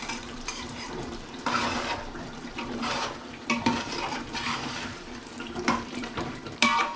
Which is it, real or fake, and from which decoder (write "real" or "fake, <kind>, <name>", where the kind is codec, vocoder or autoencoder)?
fake, vocoder, BigVGAN v2